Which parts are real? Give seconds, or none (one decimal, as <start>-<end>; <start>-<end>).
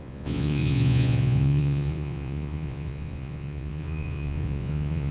none